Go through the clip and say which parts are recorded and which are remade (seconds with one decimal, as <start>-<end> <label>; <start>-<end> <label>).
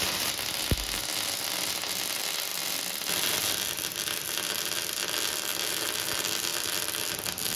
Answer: 0.0-6.5 recorded; 6.5-7.1 remade; 7.1-7.6 recorded